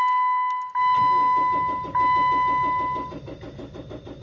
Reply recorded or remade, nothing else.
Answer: recorded